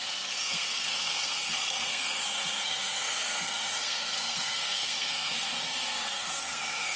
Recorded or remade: remade